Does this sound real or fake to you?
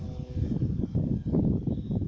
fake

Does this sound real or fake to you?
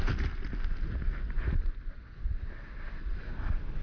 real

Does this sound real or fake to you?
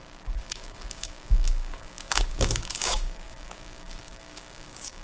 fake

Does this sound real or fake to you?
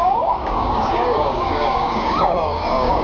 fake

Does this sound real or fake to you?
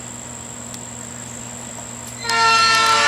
real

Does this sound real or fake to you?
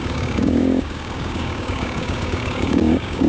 fake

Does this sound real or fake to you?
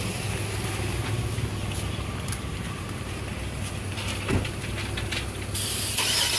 real